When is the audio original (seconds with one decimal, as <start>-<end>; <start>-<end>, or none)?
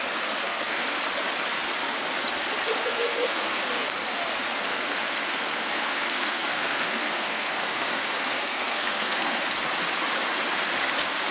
0.0-0.4; 1.0-2.8; 3.6-4.6; 9.4-11.3